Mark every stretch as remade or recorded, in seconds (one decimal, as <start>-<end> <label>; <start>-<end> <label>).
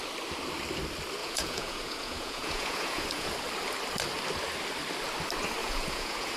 0.0-1.2 recorded; 1.2-3.3 remade; 3.3-5.6 recorded; 5.6-6.4 remade